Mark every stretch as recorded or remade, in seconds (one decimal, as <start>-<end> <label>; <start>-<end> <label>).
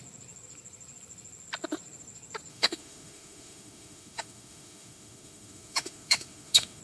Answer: 0.0-2.5 recorded; 2.5-6.8 remade